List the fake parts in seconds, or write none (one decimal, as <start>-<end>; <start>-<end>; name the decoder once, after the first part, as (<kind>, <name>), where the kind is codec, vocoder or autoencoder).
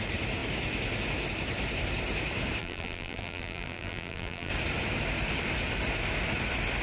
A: 2.6-4.5 (vocoder, BigVGAN v2)